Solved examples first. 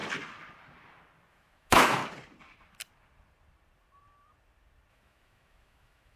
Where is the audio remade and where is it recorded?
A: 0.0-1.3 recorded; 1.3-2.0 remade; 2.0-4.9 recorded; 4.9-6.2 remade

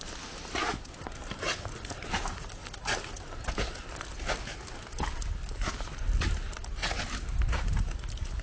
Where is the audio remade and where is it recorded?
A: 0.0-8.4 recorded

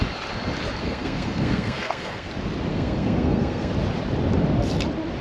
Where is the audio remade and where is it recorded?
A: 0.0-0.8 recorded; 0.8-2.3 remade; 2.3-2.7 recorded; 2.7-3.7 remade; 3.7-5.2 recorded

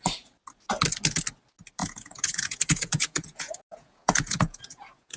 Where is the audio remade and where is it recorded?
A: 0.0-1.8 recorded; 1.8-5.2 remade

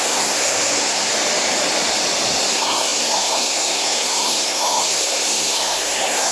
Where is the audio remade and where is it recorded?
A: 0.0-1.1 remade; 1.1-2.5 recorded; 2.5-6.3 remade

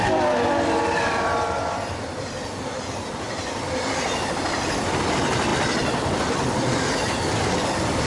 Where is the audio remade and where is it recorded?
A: 0.0-8.1 remade

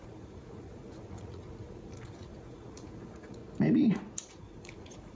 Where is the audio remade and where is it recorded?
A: 0.0-3.4 remade; 3.4-4.3 recorded; 4.3-5.2 remade

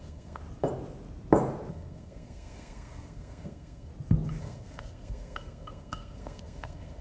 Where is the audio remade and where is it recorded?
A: 0.0-0.4 remade; 0.4-1.7 recorded; 1.7-3.9 remade; 3.9-4.4 recorded; 4.4-7.0 remade